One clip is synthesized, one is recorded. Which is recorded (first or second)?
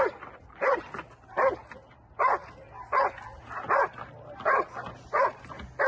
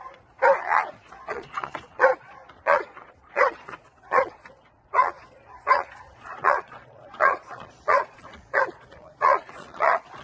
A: first